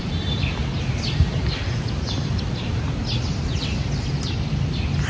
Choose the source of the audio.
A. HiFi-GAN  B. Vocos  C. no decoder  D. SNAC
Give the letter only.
C